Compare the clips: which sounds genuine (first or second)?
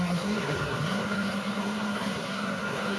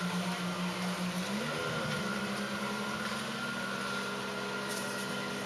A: second